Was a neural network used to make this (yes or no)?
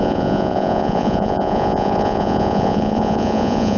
yes